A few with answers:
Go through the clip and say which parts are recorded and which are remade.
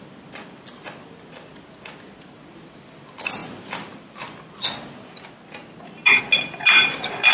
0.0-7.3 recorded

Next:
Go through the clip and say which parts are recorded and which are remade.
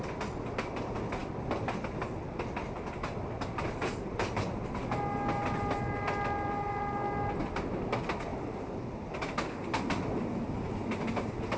0.0-11.6 recorded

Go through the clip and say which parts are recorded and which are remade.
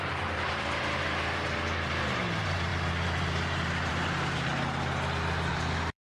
0.0-4.5 remade; 4.5-5.5 recorded; 5.5-6.0 remade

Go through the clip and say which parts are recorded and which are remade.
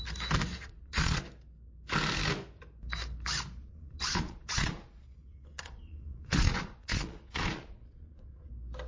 0.0-0.5 recorded; 0.5-1.2 remade; 1.2-3.6 recorded; 3.6-8.5 remade; 8.5-8.9 recorded